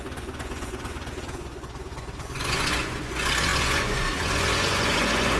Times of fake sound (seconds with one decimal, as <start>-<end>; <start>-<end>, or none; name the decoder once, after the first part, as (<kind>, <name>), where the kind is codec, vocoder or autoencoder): 0.0-5.4 (vocoder, Vocos)